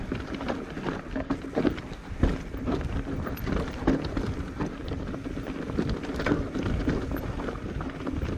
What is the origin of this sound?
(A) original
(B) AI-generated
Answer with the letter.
A